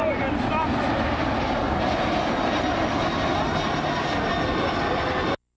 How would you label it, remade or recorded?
recorded